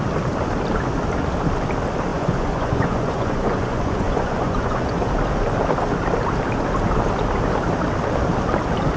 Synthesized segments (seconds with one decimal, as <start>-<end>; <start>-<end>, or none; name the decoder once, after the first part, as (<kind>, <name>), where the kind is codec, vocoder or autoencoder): 2.1-5.0 (vocoder, Vocos)